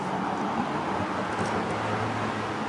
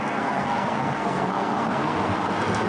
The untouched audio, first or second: first